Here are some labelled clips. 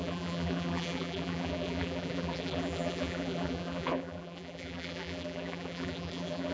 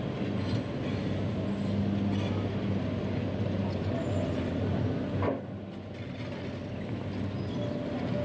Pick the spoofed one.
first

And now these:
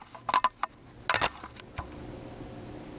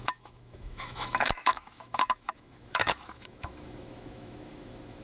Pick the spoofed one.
second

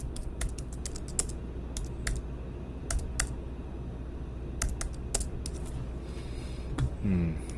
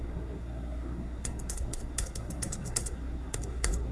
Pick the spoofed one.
second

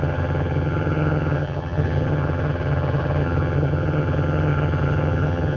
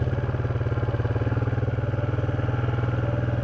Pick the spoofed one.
first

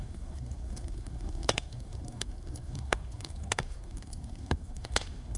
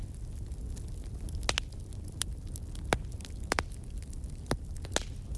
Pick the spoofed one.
first